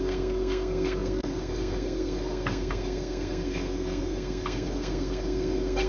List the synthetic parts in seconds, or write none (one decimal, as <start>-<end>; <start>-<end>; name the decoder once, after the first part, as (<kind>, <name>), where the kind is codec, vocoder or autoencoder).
0.0-5.9 (codec, SNAC)